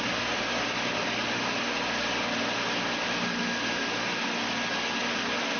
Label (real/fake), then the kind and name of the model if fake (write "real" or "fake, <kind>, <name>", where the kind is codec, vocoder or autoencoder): real